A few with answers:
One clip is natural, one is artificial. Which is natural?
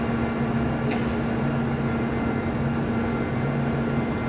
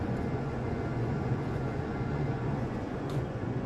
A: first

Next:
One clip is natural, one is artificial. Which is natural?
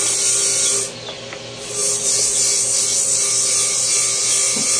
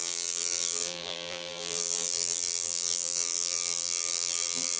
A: first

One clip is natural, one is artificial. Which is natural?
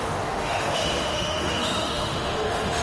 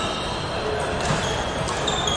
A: second